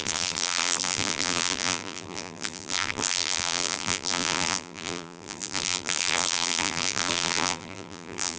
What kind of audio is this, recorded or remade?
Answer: remade